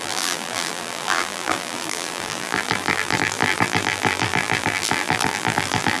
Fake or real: fake